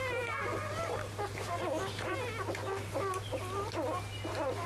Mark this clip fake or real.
real